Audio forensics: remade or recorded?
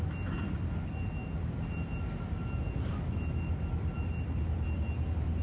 recorded